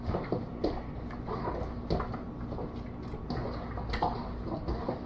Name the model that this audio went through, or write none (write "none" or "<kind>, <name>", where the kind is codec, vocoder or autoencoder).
none